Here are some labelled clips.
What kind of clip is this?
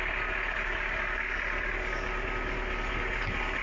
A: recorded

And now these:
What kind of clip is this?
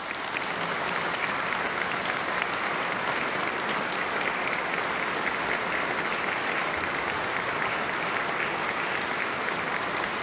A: recorded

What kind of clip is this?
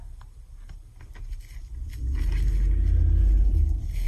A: recorded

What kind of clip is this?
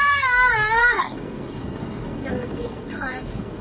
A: remade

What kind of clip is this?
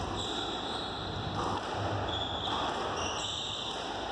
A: recorded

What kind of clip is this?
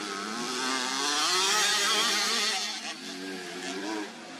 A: recorded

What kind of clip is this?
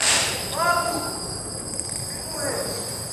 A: remade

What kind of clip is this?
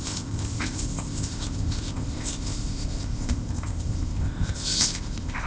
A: remade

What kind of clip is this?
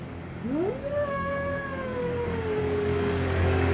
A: remade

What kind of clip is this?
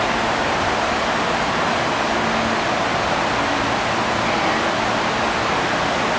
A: recorded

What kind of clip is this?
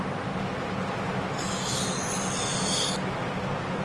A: recorded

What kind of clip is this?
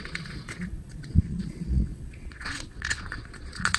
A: remade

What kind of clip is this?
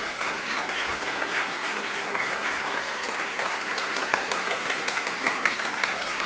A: remade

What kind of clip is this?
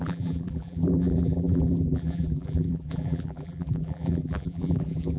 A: remade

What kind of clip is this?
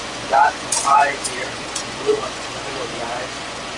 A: remade